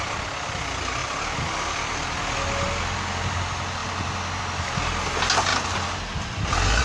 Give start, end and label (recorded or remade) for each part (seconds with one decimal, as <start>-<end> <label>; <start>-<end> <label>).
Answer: 0.0-6.8 recorded